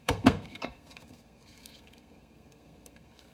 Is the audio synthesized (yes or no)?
yes